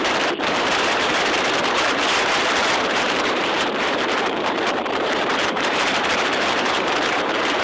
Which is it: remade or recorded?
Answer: remade